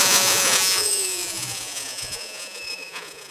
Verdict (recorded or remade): remade